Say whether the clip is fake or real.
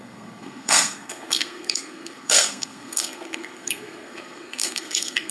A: fake